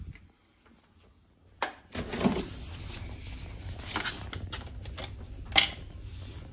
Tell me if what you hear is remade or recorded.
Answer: recorded